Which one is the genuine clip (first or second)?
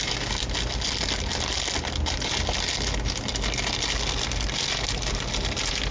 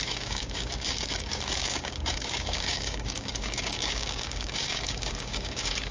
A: first